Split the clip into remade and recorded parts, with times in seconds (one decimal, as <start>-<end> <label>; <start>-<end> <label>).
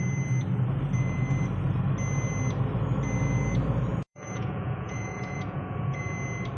0.0-3.9 recorded; 3.9-6.0 remade; 6.0-6.6 recorded